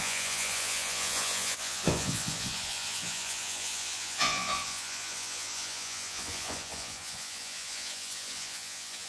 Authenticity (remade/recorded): remade